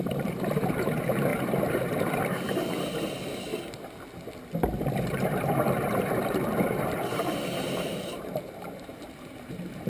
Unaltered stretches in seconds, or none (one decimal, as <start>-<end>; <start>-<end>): 3.5-4.8